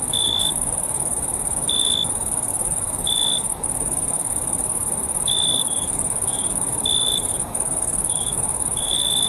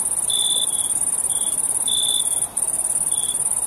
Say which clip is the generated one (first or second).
first